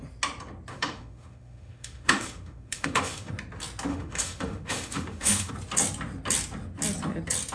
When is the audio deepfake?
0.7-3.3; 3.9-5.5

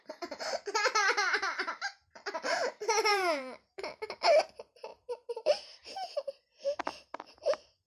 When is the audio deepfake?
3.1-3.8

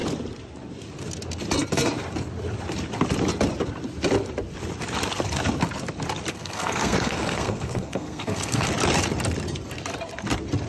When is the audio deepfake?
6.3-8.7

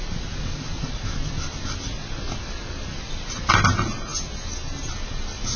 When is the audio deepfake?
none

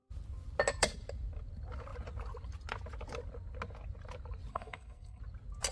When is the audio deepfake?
4.5-5.2

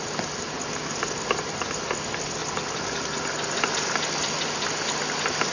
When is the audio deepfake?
none